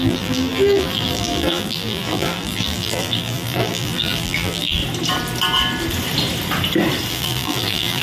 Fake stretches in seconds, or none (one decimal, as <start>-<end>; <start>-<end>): 0.0-4.8; 7.1-8.0